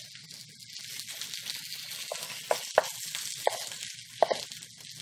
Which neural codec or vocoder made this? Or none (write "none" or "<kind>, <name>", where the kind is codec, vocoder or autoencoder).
none